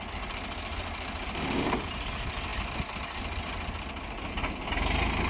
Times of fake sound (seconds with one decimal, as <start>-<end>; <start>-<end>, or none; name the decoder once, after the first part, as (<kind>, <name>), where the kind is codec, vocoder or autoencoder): none